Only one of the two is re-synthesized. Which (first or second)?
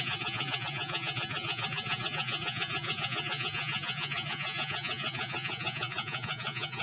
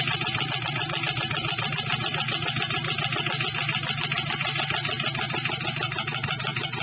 first